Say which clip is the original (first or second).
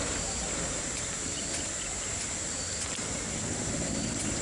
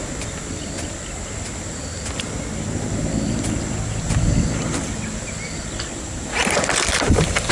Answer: second